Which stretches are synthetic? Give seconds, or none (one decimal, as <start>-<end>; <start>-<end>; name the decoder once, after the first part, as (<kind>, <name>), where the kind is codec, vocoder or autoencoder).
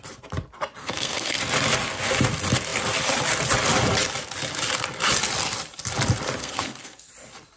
0.8-1.4 (codec, SNAC); 6.4-7.1